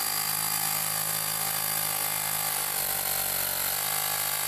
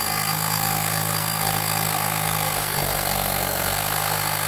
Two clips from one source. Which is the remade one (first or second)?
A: second